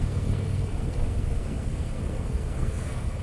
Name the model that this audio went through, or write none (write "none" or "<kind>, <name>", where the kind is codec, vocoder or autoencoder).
codec, SNAC